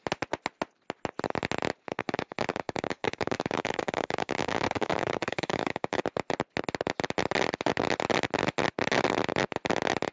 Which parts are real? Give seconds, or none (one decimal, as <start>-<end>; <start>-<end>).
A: 0.0-2.0; 6.0-10.1